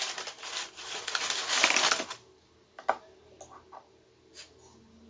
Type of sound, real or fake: real